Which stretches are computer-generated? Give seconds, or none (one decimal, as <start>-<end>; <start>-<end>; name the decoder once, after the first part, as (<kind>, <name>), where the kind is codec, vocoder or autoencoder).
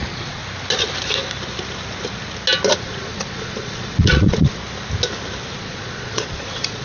0.0-0.4 (vocoder, Vocos); 2.8-4.6; 5.5-6.8